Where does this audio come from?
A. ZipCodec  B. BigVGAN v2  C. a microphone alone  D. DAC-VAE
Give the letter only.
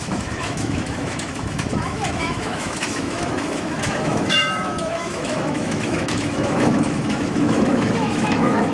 D